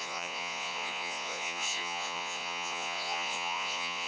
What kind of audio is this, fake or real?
fake